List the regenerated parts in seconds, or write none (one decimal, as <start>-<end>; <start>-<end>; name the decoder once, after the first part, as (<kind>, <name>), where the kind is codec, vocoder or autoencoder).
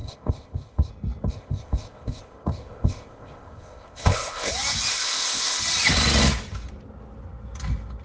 0.0-0.9 (codec, ZipCodec); 1.3-4.5; 4.9-5.6